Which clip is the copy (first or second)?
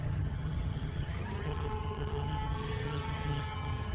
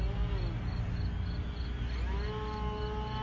first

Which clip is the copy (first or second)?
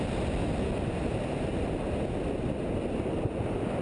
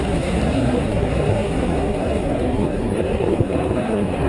second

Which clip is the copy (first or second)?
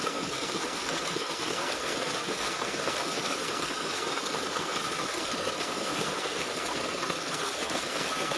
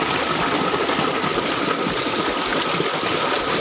first